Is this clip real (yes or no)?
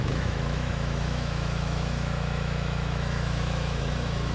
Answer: no